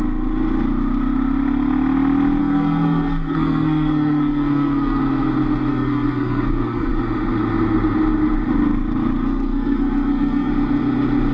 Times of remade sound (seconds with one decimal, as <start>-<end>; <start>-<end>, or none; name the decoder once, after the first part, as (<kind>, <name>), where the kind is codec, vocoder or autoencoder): 2.4-5.0 (codec, SNAC); 5.7-6.9; 9.2-10.5